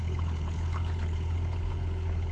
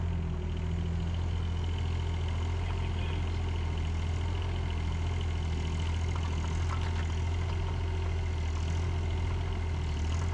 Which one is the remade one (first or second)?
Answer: first